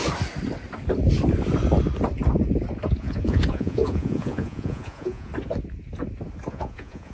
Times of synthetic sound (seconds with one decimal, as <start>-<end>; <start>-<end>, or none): 3.0-5.3; 6.5-7.1